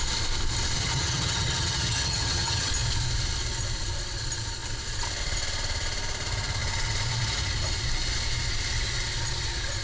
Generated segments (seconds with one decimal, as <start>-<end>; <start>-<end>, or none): 0.8-2.7